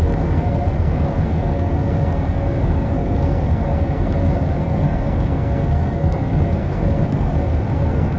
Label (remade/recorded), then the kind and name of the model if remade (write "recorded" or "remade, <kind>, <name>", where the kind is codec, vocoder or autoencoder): remade, codec, SNAC